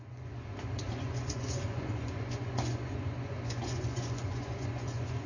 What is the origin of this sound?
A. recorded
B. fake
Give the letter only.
B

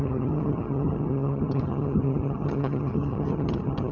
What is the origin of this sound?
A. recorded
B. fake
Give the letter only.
B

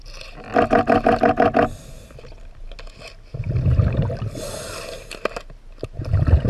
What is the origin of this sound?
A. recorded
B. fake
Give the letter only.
A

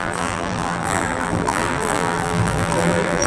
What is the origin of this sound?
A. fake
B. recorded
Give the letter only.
A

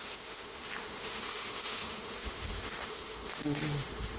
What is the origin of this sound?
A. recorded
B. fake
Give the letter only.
B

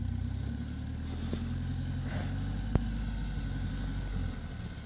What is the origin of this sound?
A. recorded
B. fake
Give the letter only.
A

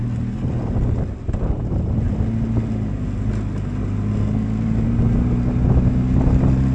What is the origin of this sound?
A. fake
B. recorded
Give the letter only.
B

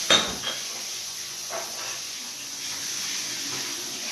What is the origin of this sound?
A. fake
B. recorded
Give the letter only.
A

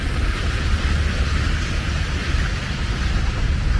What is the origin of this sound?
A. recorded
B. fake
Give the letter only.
A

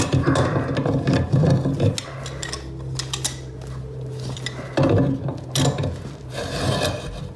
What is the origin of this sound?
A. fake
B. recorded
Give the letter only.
B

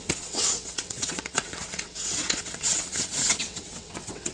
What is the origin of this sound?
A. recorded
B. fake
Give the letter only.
B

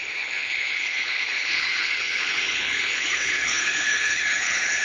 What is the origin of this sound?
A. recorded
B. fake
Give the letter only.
B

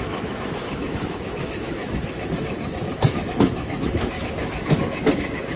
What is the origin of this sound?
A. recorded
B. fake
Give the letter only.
B